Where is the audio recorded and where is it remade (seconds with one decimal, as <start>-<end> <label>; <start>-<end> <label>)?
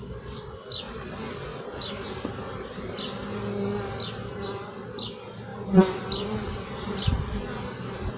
0.0-1.5 recorded; 1.5-3.0 remade; 3.0-5.5 recorded; 5.5-7.2 remade; 7.2-8.2 recorded